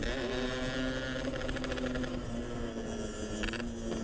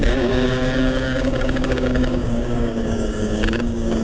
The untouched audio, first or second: first